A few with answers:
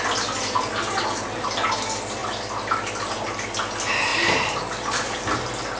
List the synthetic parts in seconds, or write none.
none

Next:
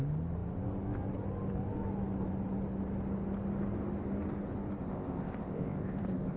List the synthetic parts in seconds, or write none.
4.8-6.4 (codec, ZipCodec)